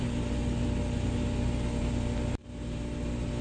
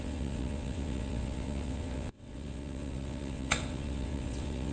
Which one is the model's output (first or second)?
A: second